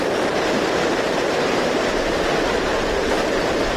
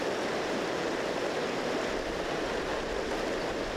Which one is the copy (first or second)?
first